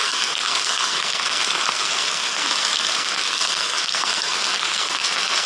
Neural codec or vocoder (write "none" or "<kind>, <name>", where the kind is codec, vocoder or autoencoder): codec, SNAC